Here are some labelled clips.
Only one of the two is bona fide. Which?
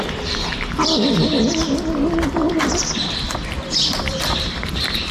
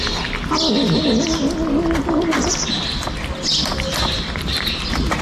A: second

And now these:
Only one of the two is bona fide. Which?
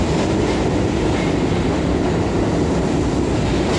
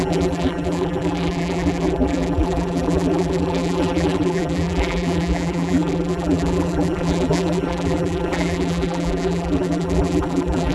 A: first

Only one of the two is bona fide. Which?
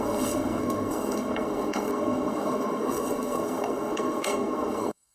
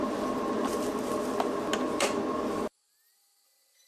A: second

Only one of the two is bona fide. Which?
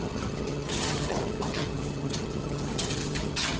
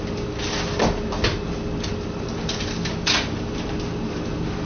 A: second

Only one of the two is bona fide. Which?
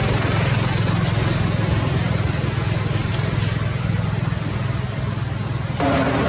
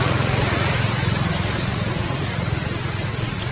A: first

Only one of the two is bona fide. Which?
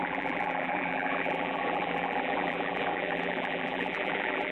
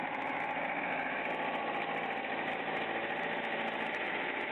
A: second